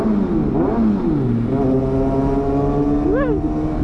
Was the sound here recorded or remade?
recorded